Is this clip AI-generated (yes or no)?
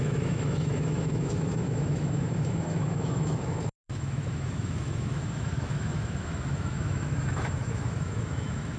yes